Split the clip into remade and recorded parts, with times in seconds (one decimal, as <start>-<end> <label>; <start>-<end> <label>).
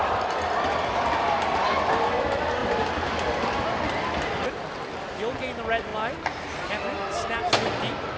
0.0-8.2 recorded